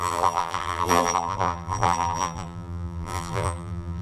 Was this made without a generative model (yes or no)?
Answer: no